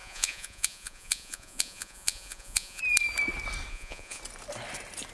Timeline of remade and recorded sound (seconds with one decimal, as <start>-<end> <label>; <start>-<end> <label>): 0.0-2.8 remade; 2.8-3.7 recorded; 3.7-4.2 remade; 4.2-5.1 recorded